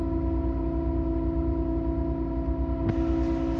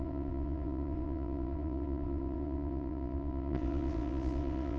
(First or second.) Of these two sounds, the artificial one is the second